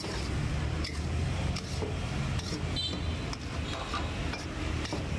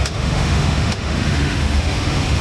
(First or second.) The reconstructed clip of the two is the second